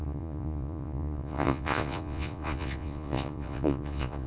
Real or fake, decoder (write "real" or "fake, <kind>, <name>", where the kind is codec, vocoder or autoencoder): fake, vocoder, Vocos